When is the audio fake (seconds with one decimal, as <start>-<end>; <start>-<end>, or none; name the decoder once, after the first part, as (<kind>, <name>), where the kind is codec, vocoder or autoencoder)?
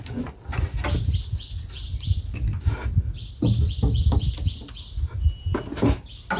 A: none